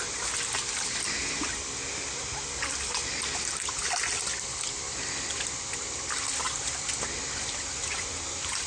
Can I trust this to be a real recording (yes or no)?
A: yes